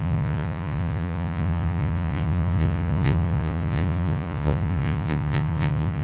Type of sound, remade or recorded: remade